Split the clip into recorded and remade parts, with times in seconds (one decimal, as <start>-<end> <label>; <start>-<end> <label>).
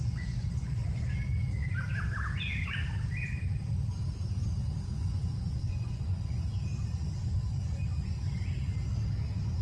0.0-1.1 remade; 1.1-5.0 recorded; 5.0-6.4 remade; 6.4-9.6 recorded